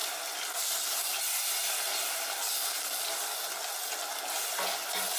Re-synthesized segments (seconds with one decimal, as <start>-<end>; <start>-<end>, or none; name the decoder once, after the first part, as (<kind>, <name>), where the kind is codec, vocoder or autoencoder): none